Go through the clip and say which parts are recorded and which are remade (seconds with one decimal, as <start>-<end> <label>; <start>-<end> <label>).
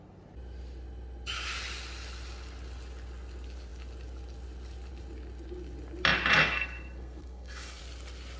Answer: 0.0-6.4 recorded; 6.4-7.8 remade; 7.8-8.4 recorded